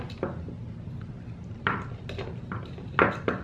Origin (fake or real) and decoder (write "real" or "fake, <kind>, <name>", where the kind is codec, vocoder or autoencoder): real